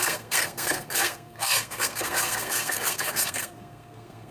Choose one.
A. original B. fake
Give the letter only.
B